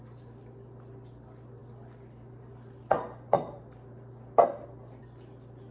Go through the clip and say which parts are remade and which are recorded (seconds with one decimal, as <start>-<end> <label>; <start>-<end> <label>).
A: 0.0-5.7 recorded